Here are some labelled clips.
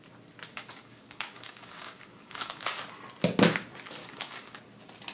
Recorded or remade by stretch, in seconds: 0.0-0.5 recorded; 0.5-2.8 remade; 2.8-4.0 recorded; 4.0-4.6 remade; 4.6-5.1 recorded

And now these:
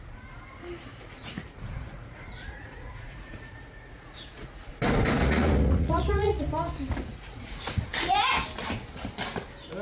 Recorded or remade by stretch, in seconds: 0.0-0.9 recorded; 0.9-4.7 remade; 4.7-5.2 recorded; 5.2-6.4 remade; 6.4-7.1 recorded; 7.1-7.9 remade; 7.9-9.8 recorded

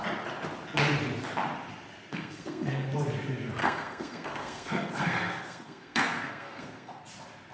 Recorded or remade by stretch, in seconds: 0.0-2.1 recorded; 2.1-2.9 remade; 2.9-3.6 recorded; 3.6-7.0 remade; 7.0-7.5 recorded

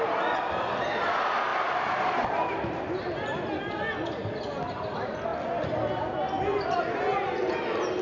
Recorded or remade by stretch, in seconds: 0.0-8.0 recorded

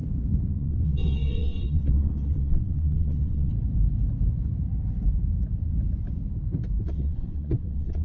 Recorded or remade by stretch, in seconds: 0.0-0.5 recorded; 0.5-3.5 remade; 3.5-6.8 recorded; 6.8-8.0 remade

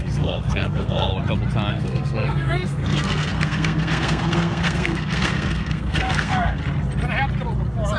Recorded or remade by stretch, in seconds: 0.0-1.1 remade; 1.1-1.7 recorded; 1.7-6.6 remade; 6.6-8.0 recorded

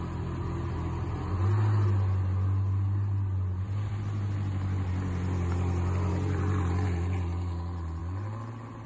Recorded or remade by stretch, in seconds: 0.0-8.9 recorded